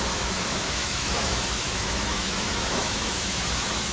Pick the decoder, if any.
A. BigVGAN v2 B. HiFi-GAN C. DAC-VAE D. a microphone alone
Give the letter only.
C